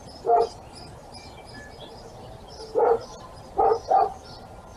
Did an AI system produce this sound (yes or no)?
no